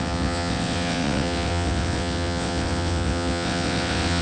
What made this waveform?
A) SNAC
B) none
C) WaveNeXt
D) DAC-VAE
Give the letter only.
C